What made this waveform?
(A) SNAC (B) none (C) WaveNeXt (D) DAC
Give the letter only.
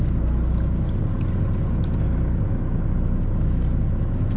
B